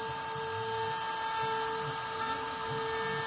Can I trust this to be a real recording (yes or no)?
yes